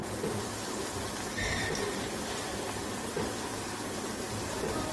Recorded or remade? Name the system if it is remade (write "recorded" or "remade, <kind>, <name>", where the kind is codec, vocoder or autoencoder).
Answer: remade, vocoder, BigVGAN v2